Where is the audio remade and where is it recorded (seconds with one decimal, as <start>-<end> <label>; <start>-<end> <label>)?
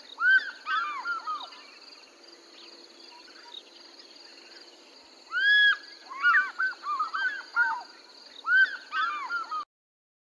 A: 0.0-10.2 recorded